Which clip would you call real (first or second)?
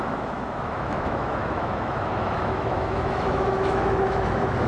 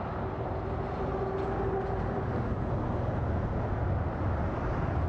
second